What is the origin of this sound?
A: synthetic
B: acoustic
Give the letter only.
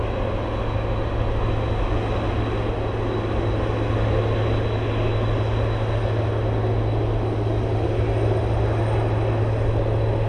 B